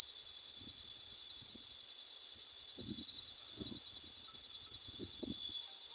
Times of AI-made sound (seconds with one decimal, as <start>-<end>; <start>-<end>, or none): none